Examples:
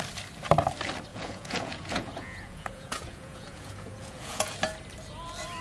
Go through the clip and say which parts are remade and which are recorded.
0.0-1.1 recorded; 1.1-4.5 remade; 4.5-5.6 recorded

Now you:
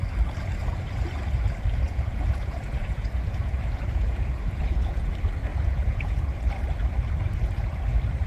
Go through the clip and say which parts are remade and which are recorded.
0.0-1.8 recorded; 1.8-5.1 remade; 5.1-5.5 recorded; 5.5-6.2 remade; 6.2-8.3 recorded

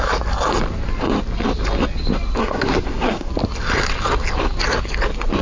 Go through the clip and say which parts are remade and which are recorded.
0.0-2.4 recorded; 2.4-3.3 remade; 3.3-5.4 recorded